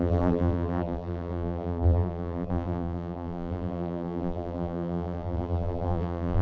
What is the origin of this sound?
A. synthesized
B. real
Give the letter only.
A